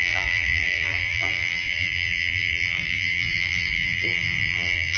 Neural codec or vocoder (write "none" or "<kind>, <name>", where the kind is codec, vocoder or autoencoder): vocoder, BigVGAN v2